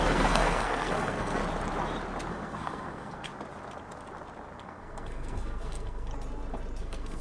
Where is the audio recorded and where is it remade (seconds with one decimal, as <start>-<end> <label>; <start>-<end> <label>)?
0.0-1.4 remade; 1.4-2.3 recorded; 2.3-3.3 remade; 3.3-4.6 recorded; 4.6-6.1 remade; 6.1-6.8 recorded; 6.8-7.2 remade